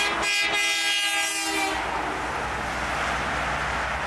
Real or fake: real